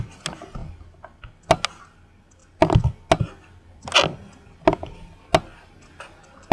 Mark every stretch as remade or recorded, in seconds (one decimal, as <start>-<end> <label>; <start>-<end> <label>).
0.0-6.5 recorded